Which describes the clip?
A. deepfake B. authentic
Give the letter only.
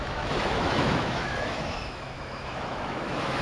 A